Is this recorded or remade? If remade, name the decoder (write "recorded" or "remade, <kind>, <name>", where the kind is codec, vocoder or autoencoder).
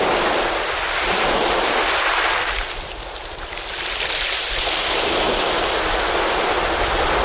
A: recorded